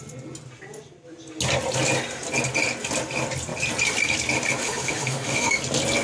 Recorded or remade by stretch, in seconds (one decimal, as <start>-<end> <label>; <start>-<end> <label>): 0.0-4.6 recorded; 4.6-5.6 remade; 5.6-6.0 recorded